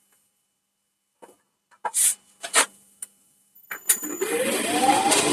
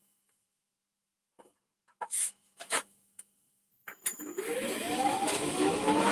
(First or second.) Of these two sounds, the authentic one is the first